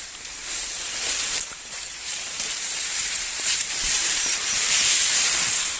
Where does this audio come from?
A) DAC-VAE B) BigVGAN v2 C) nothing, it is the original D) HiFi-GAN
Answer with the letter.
B